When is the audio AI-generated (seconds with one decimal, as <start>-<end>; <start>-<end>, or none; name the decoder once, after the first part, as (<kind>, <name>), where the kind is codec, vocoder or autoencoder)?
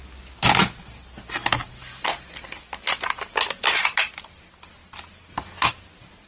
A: 1.4-3.8 (vocoder, BigVGAN v2); 4.8-5.7